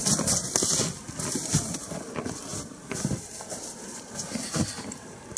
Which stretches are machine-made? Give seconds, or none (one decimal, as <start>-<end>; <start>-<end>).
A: 2.5-3.1